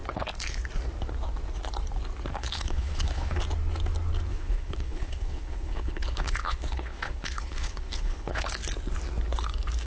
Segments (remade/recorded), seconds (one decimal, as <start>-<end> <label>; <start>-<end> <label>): 0.0-2.4 recorded; 2.4-3.4 remade; 3.4-4.3 recorded; 4.3-8.5 remade; 8.5-9.9 recorded